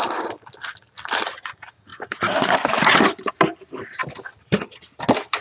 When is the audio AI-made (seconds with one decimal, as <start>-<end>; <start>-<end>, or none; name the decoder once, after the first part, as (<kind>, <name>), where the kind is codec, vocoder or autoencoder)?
1.9-3.4 (vocoder, BigVGAN v2)